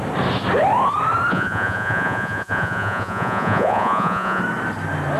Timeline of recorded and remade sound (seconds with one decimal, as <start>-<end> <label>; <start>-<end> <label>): 0.0-1.3 recorded; 1.3-4.4 remade; 4.4-5.2 recorded